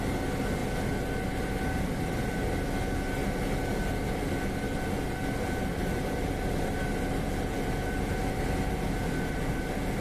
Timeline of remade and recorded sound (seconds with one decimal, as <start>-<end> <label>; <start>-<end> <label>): 0.0-5.8 recorded; 5.8-6.7 remade; 6.7-10.0 recorded